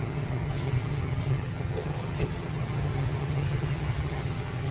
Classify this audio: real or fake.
fake